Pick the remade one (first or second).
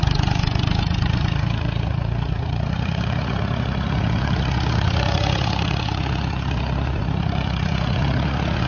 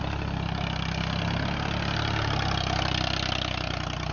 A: first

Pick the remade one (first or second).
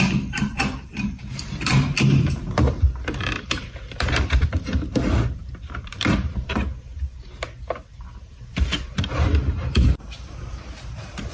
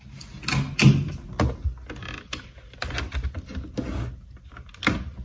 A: first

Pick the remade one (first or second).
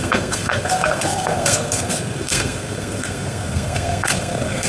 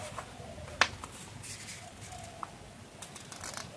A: first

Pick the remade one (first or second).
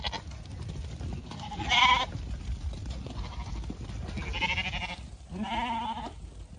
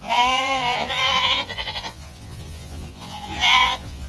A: second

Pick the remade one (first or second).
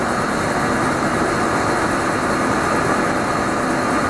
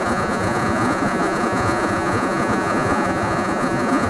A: second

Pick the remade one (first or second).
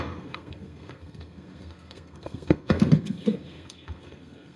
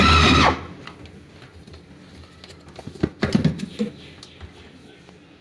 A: first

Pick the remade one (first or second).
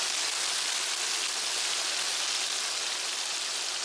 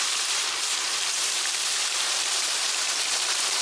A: second